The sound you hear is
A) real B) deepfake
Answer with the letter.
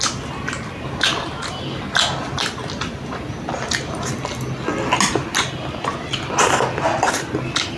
A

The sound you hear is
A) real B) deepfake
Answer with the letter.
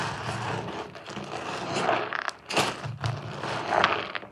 A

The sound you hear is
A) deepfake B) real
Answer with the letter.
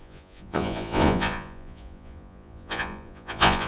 A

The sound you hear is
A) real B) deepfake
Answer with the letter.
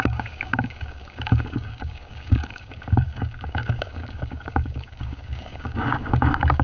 B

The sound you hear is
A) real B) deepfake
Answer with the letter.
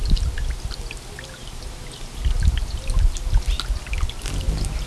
A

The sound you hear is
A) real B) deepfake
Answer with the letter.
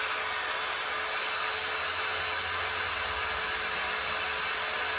A